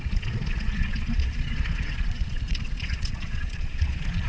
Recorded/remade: remade